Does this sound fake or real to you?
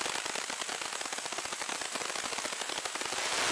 real